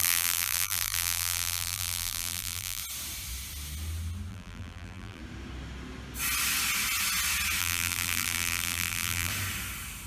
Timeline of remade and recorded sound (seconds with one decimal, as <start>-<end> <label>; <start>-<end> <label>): 0.0-2.8 remade; 2.8-4.3 recorded; 4.3-5.2 remade; 5.2-7.6 recorded; 7.6-9.3 remade; 9.3-10.1 recorded